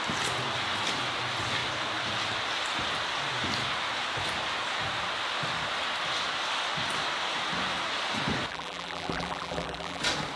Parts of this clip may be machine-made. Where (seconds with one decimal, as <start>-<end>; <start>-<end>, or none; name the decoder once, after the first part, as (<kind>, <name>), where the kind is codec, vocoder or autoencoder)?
8.5-10.0 (vocoder, BigVGAN v2)